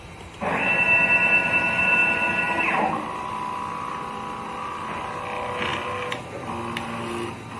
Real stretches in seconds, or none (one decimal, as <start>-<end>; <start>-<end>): 0.0-7.6